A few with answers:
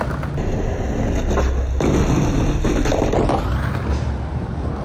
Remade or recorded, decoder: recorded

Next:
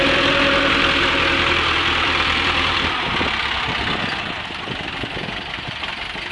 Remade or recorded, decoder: remade, vocoder, BigVGAN v2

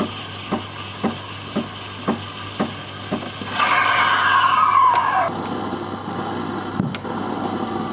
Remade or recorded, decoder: recorded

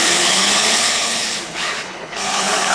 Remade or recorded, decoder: remade, codec, HILCodec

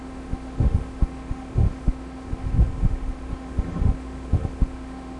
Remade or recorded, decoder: remade, autoencoder, DAC-VAE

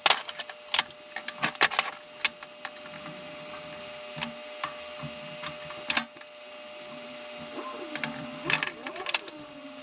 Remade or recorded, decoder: recorded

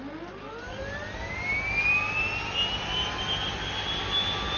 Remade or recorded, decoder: recorded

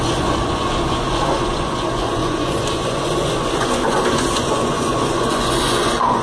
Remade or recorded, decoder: remade, vocoder, Vocos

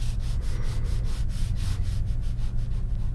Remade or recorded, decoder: recorded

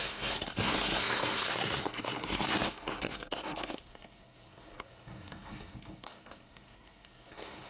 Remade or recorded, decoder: remade, codec, SNAC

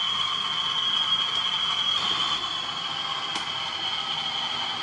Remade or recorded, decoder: recorded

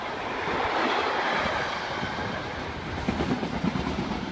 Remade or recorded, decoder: recorded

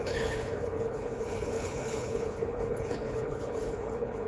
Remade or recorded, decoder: remade, codec, HILCodec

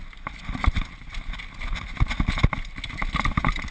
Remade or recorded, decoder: recorded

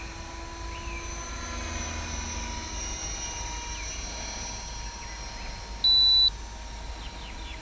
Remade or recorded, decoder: recorded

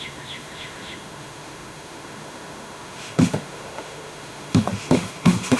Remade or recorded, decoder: remade, autoencoder, DAC-VAE